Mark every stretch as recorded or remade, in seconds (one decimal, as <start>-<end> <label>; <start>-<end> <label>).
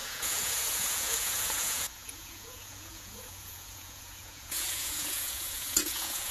0.0-6.3 remade